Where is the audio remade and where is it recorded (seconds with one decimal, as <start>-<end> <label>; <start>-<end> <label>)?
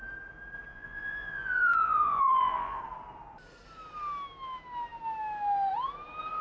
0.0-0.7 recorded; 0.7-2.8 remade; 2.8-6.4 recorded